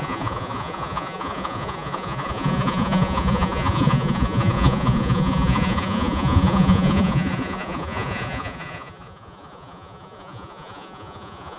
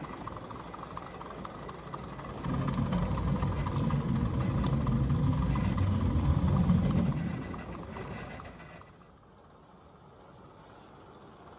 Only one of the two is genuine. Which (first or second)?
second